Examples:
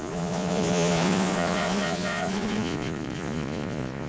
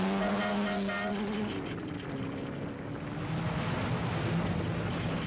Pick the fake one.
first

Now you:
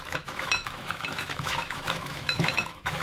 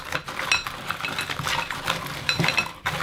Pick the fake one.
first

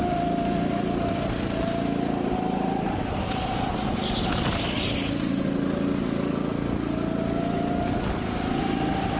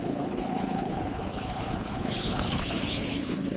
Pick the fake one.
second